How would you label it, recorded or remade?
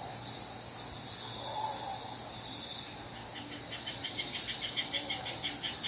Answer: recorded